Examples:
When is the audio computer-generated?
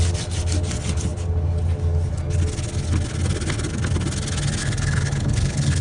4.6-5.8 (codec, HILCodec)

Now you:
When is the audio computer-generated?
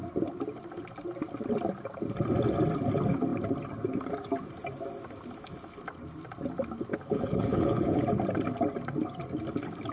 6.9-8.0 (codec, HILCodec)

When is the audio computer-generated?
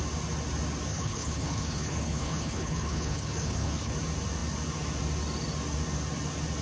0.9-3.9 (codec, HILCodec)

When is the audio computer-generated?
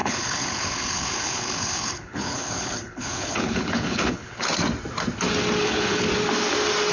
0.0-4.5 (codec, HILCodec); 5.6-6.1